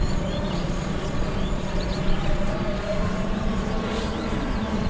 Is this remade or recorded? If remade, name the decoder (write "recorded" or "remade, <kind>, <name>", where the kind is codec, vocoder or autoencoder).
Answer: remade, vocoder, Vocos